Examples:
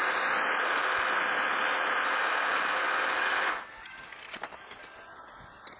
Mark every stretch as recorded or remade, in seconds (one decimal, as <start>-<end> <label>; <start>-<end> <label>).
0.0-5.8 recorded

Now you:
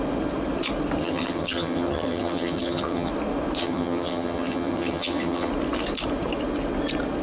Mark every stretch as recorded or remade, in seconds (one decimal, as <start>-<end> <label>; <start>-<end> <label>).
0.0-1.0 recorded; 1.0-3.1 remade; 3.1-3.6 recorded; 3.6-5.5 remade; 5.5-7.2 recorded

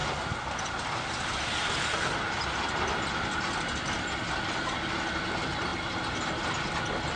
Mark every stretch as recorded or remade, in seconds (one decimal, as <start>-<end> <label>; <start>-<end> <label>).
0.0-7.2 recorded

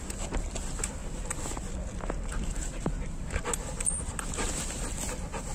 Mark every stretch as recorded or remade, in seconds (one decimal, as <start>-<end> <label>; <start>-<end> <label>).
0.0-5.5 recorded

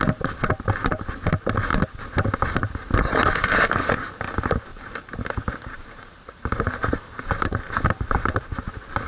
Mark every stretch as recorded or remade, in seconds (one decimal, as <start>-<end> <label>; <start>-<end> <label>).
0.0-4.7 recorded; 4.7-8.7 remade; 8.7-9.1 recorded

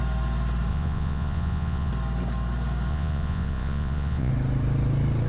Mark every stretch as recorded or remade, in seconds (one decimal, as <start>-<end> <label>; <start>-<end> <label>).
0.0-0.7 recorded; 0.7-1.9 remade; 1.9-2.9 recorded; 2.9-4.3 remade; 4.3-5.3 recorded